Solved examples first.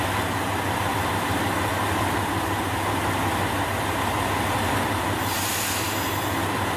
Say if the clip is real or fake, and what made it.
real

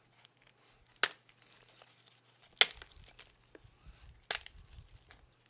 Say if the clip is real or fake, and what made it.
real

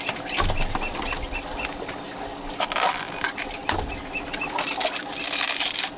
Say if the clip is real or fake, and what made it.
real